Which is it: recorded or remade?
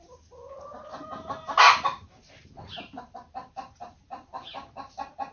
recorded